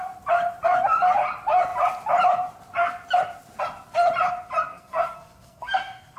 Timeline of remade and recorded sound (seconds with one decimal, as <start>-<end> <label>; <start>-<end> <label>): 0.0-4.7 recorded; 4.7-6.2 remade